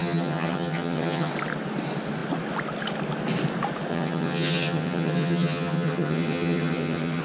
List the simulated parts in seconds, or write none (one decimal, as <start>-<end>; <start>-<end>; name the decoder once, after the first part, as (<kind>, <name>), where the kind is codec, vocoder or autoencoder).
0.0-1.3 (vocoder, HiFi-GAN); 3.9-7.2